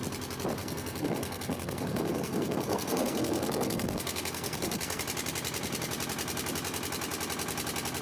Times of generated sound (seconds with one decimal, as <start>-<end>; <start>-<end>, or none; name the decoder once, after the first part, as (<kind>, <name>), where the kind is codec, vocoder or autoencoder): 0.6-5.0 (codec, SNAC)